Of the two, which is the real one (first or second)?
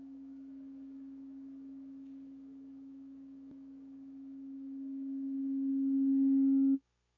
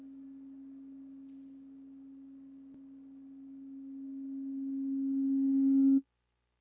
second